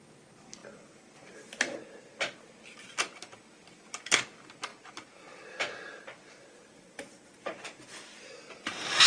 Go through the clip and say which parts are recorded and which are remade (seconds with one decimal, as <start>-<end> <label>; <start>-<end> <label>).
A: 0.0-9.1 recorded